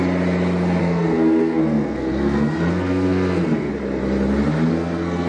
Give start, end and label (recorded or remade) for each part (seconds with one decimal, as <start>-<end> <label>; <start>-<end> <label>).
0.0-0.8 recorded; 0.8-3.7 remade; 3.7-4.7 recorded; 4.7-5.3 remade